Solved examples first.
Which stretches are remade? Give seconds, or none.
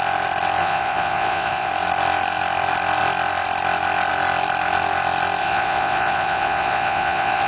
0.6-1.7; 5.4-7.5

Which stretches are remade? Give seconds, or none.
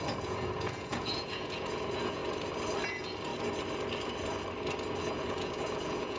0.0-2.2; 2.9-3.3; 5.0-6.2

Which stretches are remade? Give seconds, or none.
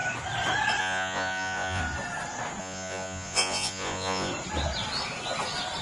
0.8-1.8; 2.6-4.3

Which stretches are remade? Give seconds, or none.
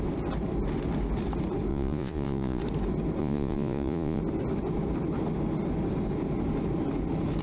1.7-2.6; 3.2-4.2